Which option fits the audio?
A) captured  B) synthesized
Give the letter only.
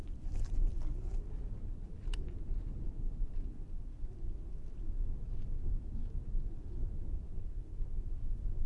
A